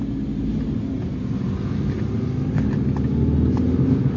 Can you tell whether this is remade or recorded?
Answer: recorded